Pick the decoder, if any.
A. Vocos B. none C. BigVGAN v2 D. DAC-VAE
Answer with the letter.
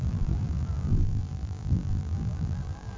C